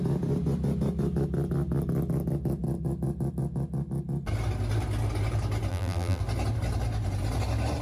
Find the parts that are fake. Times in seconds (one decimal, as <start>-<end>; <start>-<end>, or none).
5.7-6.2